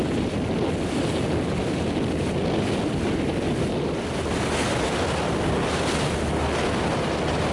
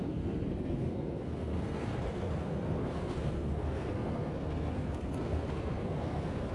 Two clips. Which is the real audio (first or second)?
first